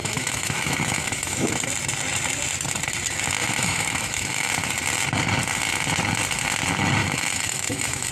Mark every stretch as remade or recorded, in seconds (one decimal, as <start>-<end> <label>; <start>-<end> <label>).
0.0-1.5 remade; 1.5-3.4 recorded; 3.4-4.5 remade; 4.5-7.0 recorded; 7.0-8.1 remade

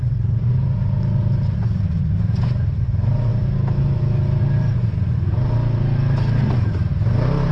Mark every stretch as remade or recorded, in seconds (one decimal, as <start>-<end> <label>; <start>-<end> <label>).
0.0-7.5 recorded

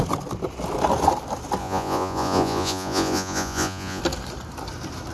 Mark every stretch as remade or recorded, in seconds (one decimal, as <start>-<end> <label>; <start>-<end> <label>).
0.0-1.6 recorded; 1.6-4.0 remade; 4.0-5.1 recorded

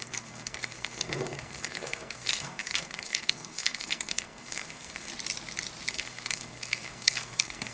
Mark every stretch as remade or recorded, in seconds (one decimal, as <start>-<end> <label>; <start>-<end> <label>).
0.0-5.1 remade; 5.1-5.9 recorded; 5.9-7.7 remade

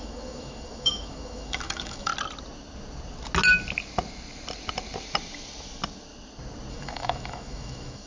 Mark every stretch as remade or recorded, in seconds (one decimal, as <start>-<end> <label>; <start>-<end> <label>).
0.0-2.1 remade; 2.1-6.7 recorded; 6.7-8.1 remade

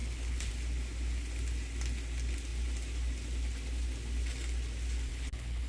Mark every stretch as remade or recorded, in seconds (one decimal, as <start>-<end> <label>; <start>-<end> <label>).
0.0-0.5 remade; 0.5-5.1 recorded; 5.1-5.7 remade

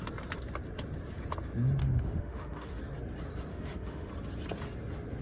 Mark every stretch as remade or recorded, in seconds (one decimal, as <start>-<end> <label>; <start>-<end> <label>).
0.0-1.8 recorded; 1.8-2.8 remade; 2.8-3.5 recorded; 3.5-4.1 remade; 4.1-5.2 recorded